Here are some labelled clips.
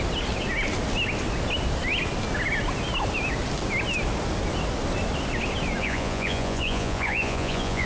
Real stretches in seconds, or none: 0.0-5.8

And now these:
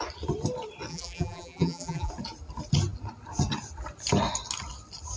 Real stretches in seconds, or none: 0.0-0.9; 2.1-5.2